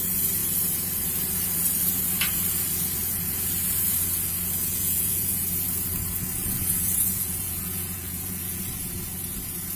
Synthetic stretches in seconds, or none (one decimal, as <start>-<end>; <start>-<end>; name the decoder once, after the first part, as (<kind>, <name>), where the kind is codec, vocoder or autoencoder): 4.6-5.4 (vocoder, Vocos); 6.4-8.6